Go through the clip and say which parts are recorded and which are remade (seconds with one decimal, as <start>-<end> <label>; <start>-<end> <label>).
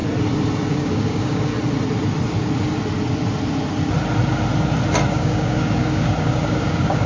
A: 0.0-0.7 recorded; 0.7-1.5 remade; 1.5-5.1 recorded; 5.1-7.1 remade